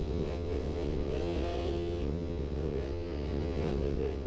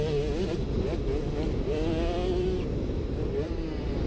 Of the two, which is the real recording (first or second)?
second